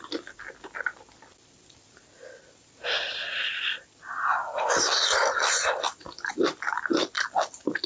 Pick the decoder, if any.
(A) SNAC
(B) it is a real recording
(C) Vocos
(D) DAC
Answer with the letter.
B